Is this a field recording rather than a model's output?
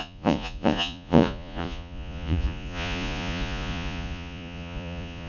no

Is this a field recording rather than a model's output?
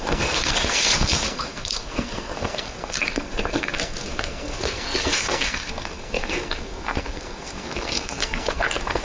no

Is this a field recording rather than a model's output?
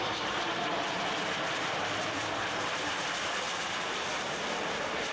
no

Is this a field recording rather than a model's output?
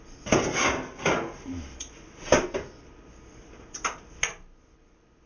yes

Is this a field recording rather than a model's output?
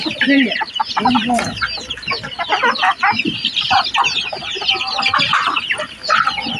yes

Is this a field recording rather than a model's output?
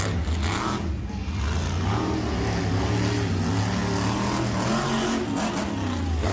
yes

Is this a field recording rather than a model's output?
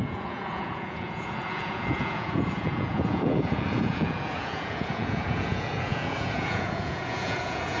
no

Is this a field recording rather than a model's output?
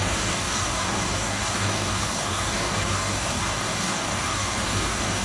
no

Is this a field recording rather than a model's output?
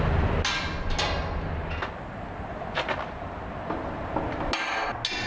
yes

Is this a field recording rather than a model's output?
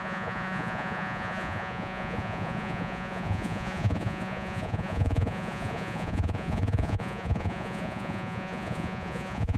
no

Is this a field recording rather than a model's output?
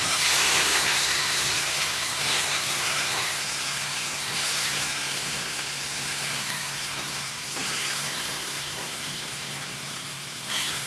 no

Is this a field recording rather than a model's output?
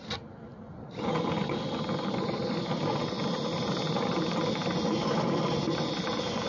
yes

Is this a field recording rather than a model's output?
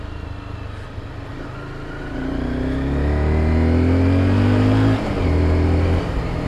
yes